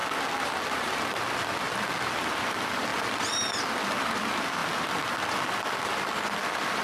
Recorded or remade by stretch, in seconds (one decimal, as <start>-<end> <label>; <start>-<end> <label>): 0.0-0.6 recorded; 0.6-6.8 remade